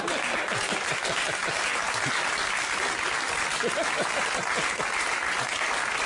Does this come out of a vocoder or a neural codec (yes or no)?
no